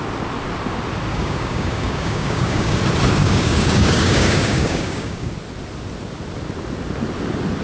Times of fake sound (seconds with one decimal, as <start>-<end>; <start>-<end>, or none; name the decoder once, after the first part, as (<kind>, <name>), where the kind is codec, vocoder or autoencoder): 1.1-2.8 (codec, DAC); 3.2-5.3